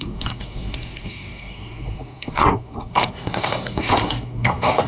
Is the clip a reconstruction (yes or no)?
yes